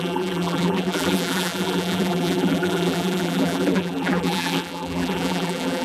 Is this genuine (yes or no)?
no